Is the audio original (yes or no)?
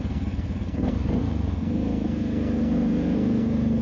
no